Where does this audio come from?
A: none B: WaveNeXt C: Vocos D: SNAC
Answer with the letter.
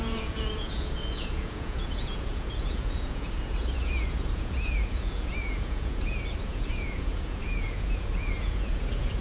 C